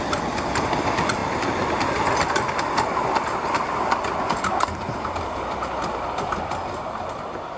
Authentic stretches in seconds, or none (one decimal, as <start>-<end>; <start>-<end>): 0.0-7.6